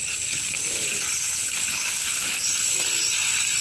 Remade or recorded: recorded